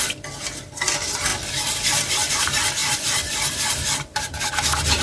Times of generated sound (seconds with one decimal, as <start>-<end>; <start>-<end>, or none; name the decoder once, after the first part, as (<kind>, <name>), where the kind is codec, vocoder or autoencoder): 2.8-4.3 (vocoder, BigVGAN v2)